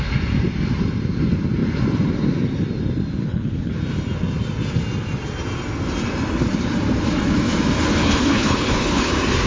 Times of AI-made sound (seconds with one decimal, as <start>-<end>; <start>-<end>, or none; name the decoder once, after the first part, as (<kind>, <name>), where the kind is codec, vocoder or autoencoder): 3.2-3.8 (codec, HILCodec); 7.9-9.1